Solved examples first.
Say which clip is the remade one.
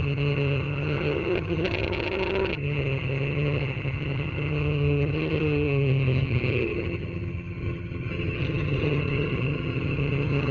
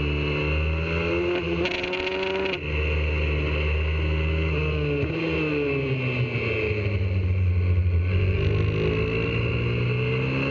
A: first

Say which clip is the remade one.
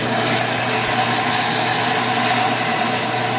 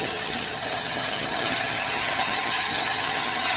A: second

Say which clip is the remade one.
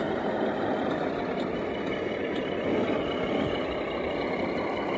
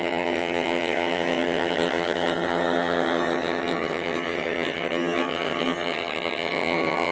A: second